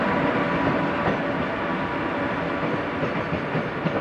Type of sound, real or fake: real